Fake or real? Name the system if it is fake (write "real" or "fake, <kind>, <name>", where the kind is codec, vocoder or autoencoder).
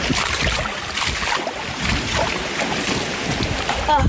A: real